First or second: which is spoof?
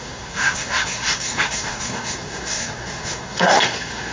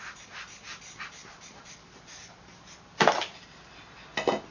first